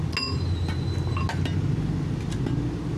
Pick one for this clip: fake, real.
real